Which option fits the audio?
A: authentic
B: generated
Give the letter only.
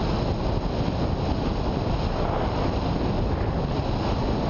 A